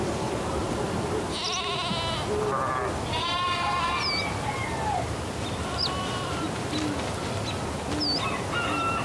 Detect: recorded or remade recorded